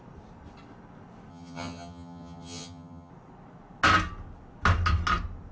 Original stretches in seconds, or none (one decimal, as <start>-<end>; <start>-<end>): 0.0-1.3; 3.1-5.5